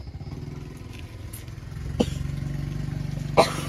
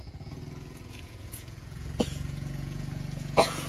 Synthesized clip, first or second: second